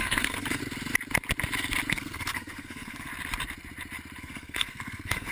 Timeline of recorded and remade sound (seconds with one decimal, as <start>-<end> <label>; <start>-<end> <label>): 0.0-0.6 remade; 0.6-1.9 recorded; 1.9-3.1 remade; 3.1-4.2 recorded; 4.2-5.3 remade